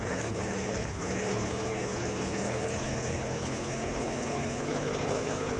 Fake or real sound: fake